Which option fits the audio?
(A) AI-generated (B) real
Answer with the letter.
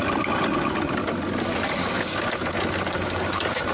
B